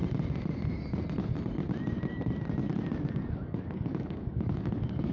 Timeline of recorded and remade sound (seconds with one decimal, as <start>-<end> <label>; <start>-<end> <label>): 0.0-3.1 recorded; 3.1-5.1 remade